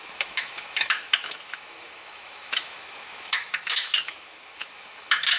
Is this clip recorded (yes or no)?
no